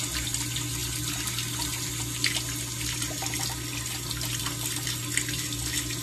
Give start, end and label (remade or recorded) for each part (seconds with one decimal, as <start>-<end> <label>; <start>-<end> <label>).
0.0-6.0 recorded